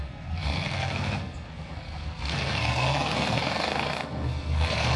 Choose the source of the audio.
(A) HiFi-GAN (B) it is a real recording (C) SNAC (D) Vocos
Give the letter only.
C